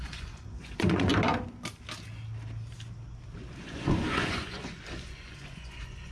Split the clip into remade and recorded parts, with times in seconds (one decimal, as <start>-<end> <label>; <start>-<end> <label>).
0.0-1.1 remade; 1.1-3.6 recorded; 3.6-6.1 remade